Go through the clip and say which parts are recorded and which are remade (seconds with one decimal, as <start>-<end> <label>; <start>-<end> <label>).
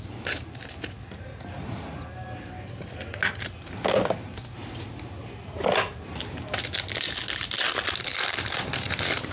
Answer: 0.0-9.3 recorded